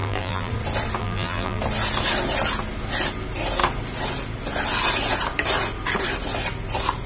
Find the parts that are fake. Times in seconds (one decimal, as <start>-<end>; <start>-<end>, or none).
0.0-0.5; 1.0-1.6